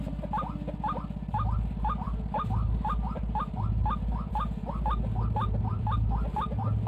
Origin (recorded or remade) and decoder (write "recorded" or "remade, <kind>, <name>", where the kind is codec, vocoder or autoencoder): recorded